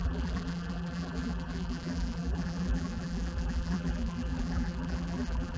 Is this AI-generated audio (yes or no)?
yes